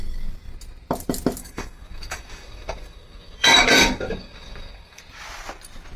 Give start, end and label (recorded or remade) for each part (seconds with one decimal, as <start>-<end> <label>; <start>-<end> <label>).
0.0-1.4 recorded; 1.4-5.0 remade; 5.0-6.0 recorded